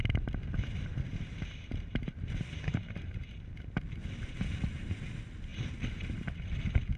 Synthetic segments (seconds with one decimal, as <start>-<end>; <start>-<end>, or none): 0.9-5.1; 5.5-7.0